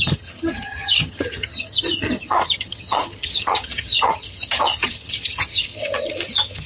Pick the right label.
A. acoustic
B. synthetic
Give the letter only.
B